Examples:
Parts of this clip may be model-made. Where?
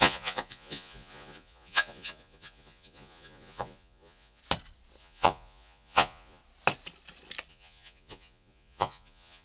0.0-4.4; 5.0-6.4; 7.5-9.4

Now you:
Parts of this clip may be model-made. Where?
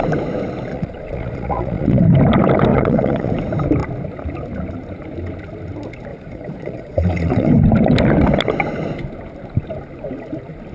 0.7-2.0; 2.7-3.3; 6.1-7.5